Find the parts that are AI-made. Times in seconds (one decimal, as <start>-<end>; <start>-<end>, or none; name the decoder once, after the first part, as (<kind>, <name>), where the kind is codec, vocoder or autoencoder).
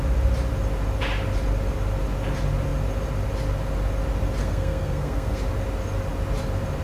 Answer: 4.4-5.4 (codec, SNAC)